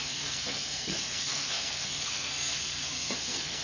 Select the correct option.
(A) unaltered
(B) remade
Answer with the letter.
B